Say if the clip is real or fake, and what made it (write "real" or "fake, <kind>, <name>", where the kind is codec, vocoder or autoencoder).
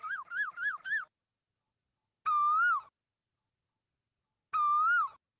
real